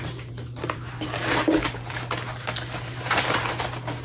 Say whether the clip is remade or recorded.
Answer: remade